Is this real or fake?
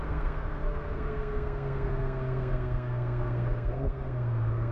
fake